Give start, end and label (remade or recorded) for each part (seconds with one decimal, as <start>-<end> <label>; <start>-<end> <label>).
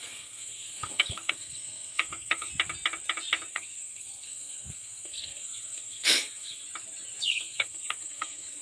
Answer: 0.0-2.5 remade; 2.5-3.5 recorded; 3.5-6.6 remade; 6.6-7.2 recorded; 7.2-8.6 remade